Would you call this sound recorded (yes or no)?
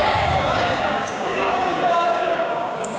no